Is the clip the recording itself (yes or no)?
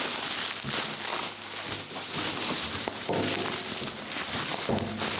yes